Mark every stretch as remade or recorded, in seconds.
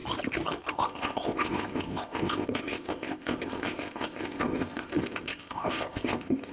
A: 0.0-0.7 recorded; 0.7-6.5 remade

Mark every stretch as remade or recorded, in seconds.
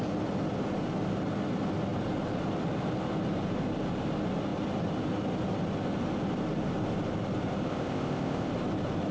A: 0.0-7.7 recorded; 7.7-8.5 remade; 8.5-9.1 recorded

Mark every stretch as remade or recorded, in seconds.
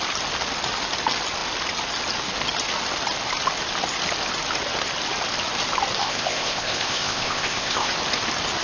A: 0.0-6.0 recorded; 6.0-7.9 remade; 7.9-8.6 recorded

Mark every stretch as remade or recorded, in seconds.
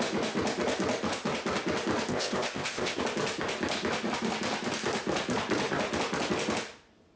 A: 0.0-2.1 recorded; 2.1-3.0 remade; 3.0-7.2 recorded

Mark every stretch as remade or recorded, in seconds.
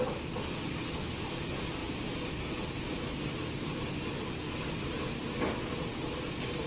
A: 0.0-6.7 recorded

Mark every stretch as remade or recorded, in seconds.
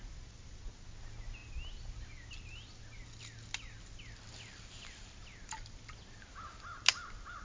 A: 0.0-7.4 recorded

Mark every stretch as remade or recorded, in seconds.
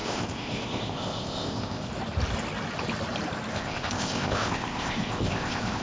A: 0.0-1.9 remade; 1.9-3.5 recorded; 3.5-5.8 remade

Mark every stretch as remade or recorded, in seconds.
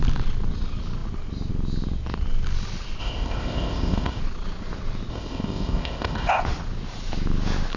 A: 0.0-3.0 recorded; 3.0-4.2 remade; 4.2-5.1 recorded; 5.1-6.4 remade; 6.4-7.8 recorded